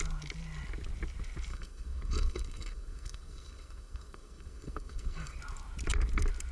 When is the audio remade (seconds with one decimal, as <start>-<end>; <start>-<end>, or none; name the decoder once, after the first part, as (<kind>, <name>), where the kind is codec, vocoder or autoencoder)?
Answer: 1.5-5.4 (codec, SNAC)